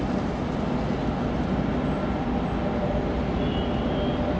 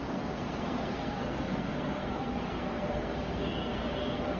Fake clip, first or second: second